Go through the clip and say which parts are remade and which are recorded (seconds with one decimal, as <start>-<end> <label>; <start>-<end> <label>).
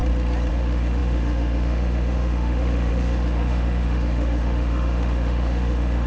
0.0-0.5 recorded; 0.5-6.1 remade